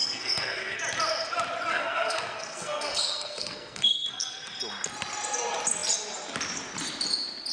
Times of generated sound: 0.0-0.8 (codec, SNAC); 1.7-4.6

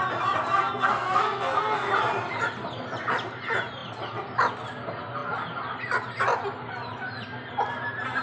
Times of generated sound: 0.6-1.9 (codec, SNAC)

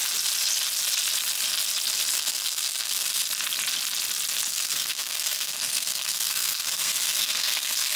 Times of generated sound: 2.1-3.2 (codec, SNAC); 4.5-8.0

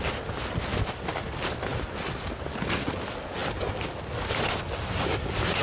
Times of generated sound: none

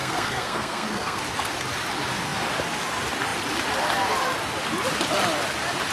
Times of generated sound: 0.0-1.2 (codec, SNAC)

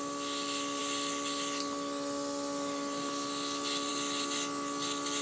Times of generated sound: none

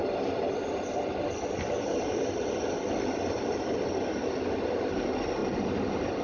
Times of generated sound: none